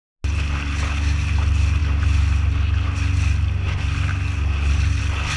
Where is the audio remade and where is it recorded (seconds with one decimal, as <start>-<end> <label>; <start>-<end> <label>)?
0.0-5.4 recorded